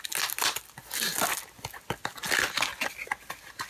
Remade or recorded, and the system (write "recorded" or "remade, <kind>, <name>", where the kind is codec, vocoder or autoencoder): recorded